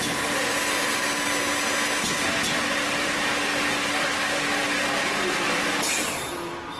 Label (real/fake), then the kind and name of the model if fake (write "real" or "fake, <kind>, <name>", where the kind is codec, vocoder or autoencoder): real